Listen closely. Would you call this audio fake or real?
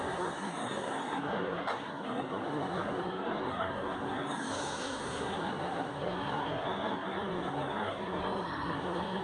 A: fake